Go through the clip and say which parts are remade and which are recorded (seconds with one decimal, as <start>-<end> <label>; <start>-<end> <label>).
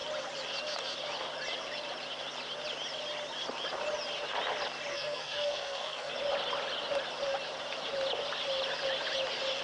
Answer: 0.0-4.9 recorded; 4.9-6.1 remade; 6.1-9.6 recorded